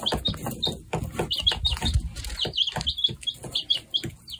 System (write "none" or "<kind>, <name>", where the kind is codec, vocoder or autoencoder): none